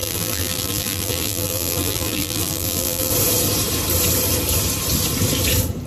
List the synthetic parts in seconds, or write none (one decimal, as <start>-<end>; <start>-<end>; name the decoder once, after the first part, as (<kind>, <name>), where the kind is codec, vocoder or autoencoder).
0.0-3.1 (vocoder, BigVGAN v2)